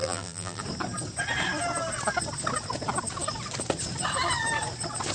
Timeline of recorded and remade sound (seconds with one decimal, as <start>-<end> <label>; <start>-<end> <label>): 0.0-0.6 remade; 0.6-5.1 recorded